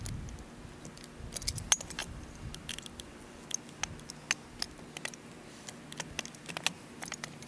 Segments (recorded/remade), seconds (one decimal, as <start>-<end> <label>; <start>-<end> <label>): 0.0-7.5 recorded